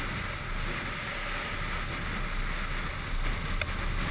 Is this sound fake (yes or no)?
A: no